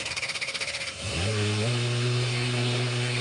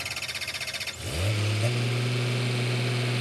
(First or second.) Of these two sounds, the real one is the second